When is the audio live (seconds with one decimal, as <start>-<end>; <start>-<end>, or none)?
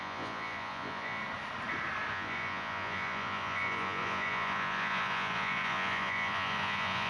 1.2-2.1